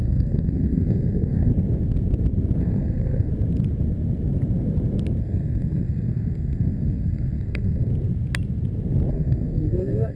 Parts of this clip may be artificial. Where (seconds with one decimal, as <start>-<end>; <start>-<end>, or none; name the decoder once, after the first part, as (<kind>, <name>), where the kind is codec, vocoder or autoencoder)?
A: 0.0-1.5 (codec, SNAC); 2.6-3.3; 5.2-7.9; 9.1-10.2